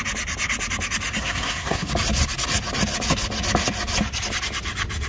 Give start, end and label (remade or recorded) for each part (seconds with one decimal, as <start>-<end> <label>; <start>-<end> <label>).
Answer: 0.0-1.2 recorded; 1.2-1.9 remade; 1.9-5.1 recorded